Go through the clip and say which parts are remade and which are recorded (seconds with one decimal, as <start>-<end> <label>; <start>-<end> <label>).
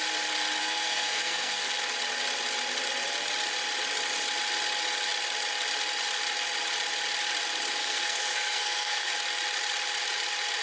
0.0-0.6 recorded; 0.6-1.7 remade; 1.7-7.8 recorded; 7.8-9.1 remade; 9.1-10.6 recorded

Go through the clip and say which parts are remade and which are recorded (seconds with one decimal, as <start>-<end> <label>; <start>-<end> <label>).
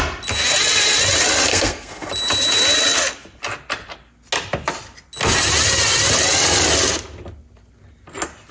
0.0-1.5 recorded; 1.5-2.1 remade; 2.1-8.5 recorded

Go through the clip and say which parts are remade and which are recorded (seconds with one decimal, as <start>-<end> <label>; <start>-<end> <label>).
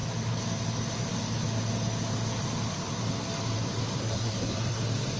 0.0-4.0 recorded; 4.0-4.8 remade; 4.8-5.2 recorded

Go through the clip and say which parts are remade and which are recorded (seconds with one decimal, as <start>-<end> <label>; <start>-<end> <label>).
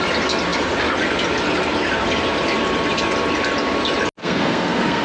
0.0-4.2 recorded; 4.2-5.0 remade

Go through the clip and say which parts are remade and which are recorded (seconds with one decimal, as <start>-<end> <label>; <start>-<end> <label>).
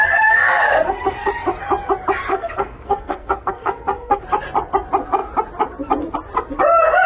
0.0-1.3 remade; 1.3-2.3 recorded; 2.3-4.2 remade; 4.2-7.1 recorded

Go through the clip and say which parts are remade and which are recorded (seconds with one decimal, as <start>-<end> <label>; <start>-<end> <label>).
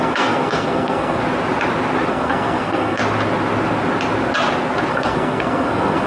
0.0-1.2 remade; 1.2-2.1 recorded; 2.1-3.0 remade; 3.0-4.9 recorded; 4.9-6.1 remade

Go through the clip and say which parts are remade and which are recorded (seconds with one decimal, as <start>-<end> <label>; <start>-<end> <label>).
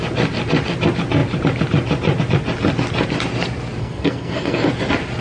0.0-3.8 recorded; 3.8-4.7 remade; 4.7-5.2 recorded